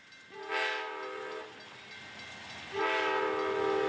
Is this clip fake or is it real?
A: real